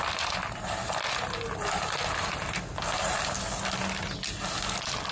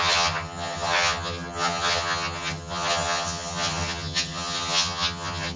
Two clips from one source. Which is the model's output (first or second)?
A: second